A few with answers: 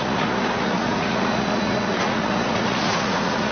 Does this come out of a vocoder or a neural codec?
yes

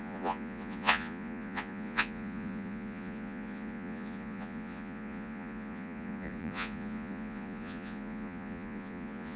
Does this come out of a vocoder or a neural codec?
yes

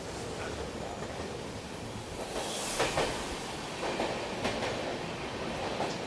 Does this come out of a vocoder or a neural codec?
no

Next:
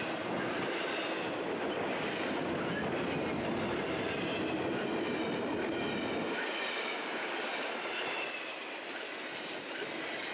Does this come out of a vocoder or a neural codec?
no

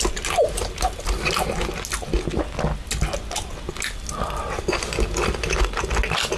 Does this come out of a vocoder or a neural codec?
no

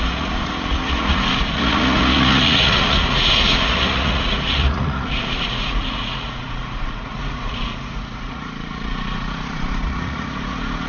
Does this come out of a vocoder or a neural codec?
yes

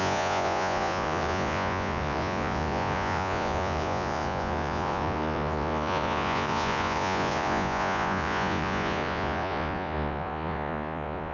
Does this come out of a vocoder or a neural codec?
yes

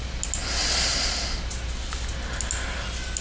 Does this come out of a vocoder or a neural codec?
no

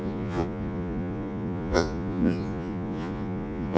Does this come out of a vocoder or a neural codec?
yes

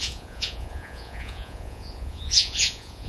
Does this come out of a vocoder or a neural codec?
yes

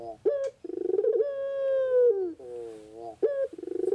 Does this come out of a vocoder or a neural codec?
no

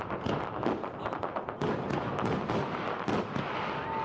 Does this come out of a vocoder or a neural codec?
no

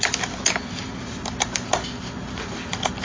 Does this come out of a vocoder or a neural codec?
no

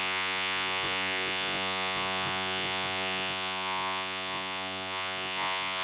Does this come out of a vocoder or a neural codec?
yes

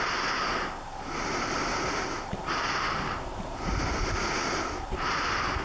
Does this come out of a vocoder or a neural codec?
no